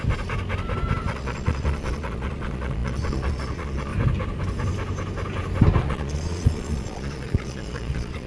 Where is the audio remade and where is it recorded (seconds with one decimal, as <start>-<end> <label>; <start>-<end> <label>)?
0.0-1.1 recorded; 1.1-3.9 remade; 3.9-5.8 recorded; 5.8-8.3 remade